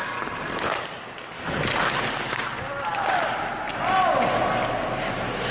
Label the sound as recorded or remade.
recorded